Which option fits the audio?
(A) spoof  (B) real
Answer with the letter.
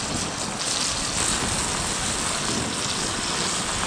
B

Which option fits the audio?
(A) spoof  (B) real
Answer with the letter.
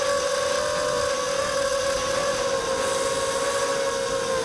B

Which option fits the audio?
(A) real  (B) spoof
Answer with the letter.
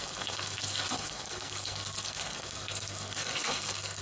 B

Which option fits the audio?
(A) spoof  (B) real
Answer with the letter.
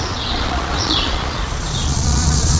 A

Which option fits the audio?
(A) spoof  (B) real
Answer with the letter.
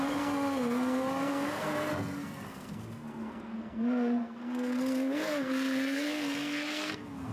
A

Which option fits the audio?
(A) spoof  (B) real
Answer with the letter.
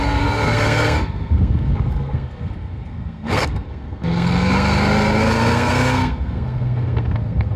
A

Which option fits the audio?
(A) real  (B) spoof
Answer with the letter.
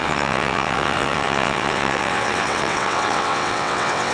B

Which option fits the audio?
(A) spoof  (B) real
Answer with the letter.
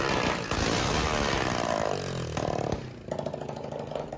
B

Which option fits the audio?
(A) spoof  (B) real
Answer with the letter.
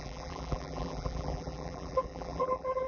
A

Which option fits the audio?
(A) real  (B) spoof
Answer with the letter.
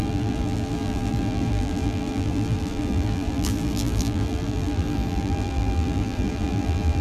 B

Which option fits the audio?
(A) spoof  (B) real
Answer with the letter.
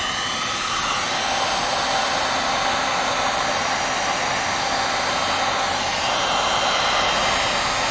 B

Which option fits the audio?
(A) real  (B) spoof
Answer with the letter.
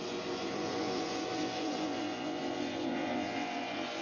B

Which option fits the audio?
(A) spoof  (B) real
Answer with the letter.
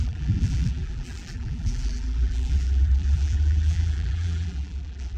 A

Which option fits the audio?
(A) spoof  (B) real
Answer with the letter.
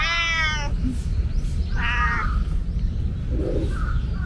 B